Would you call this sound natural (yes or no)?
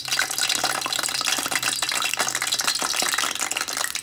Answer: yes